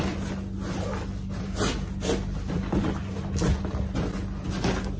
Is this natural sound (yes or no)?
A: yes